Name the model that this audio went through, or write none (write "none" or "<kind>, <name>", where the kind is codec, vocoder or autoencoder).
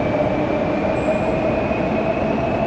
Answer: none